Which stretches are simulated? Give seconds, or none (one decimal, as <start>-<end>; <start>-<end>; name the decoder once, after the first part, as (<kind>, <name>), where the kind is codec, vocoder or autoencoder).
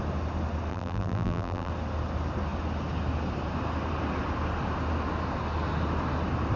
0.7-1.7 (vocoder, BigVGAN v2)